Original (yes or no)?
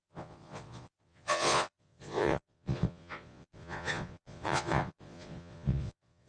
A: no